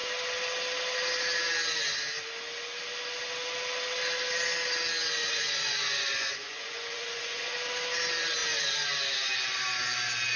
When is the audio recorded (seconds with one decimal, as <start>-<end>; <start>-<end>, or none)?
0.0-5.2; 7.5-10.4